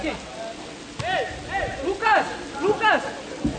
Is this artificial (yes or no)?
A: no